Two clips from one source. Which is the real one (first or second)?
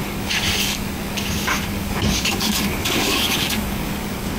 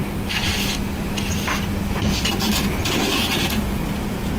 second